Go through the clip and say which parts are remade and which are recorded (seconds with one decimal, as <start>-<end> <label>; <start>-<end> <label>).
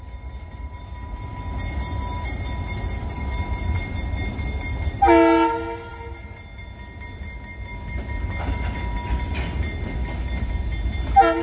0.0-11.4 recorded